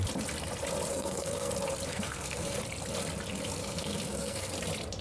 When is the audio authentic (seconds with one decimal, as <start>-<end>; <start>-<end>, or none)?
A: 0.0-0.9; 1.5-1.9; 2.6-3.6; 4.5-5.0